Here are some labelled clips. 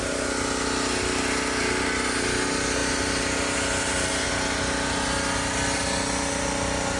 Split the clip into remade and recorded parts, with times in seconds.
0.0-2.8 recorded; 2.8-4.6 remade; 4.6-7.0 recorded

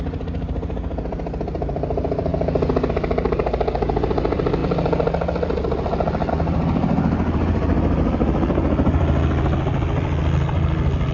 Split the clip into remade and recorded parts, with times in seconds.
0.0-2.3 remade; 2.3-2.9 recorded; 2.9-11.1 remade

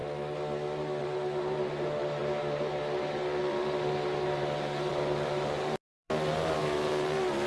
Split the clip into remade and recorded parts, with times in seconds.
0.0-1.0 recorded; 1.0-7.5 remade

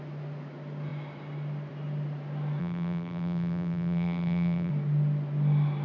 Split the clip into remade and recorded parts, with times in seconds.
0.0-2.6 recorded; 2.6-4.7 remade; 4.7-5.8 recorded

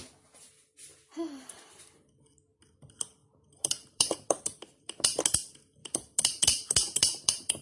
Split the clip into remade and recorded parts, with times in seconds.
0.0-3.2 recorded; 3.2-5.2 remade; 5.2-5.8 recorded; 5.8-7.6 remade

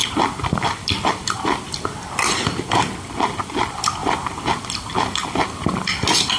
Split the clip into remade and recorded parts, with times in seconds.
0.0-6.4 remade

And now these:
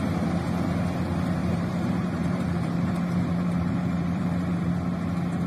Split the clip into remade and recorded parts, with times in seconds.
0.0-1.4 recorded; 1.4-4.7 remade; 4.7-5.5 recorded

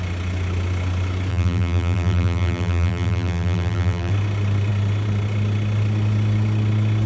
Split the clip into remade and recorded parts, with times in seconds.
0.0-1.3 recorded; 1.3-4.1 remade; 4.1-7.1 recorded